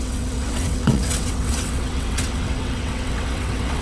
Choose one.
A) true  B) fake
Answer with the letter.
B